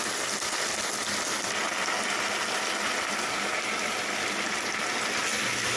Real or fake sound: real